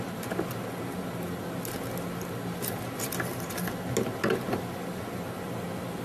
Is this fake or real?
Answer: real